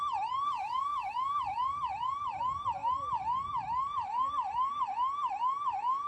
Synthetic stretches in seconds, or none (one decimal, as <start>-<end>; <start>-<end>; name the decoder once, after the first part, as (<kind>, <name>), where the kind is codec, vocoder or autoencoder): none